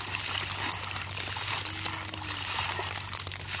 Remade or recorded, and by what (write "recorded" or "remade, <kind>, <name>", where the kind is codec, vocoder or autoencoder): recorded